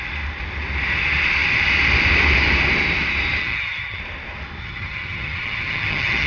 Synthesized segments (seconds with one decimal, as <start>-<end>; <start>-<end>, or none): 3.4-4.0; 4.6-6.3

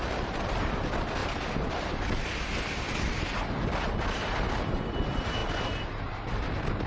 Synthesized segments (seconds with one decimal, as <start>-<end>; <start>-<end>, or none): none

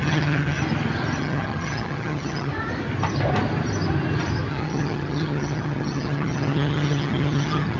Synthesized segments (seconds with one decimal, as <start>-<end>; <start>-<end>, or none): 0.0-0.6; 1.2-2.5; 4.5-7.8

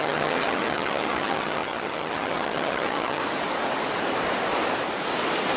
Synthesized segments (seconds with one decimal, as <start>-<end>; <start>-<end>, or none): 0.0-3.2

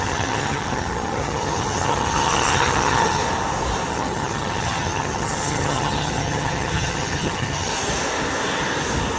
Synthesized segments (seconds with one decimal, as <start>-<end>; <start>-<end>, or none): 0.0-3.2; 3.9-7.7

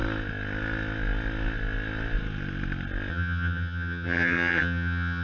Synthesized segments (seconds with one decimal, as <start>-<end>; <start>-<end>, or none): 3.1-5.2